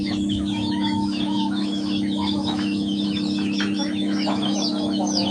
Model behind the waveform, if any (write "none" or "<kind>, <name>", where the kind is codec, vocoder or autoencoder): autoencoder, DAC-VAE